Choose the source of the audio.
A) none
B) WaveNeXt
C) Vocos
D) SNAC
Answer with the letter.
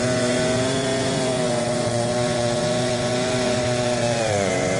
C